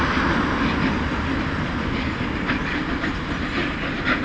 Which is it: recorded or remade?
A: recorded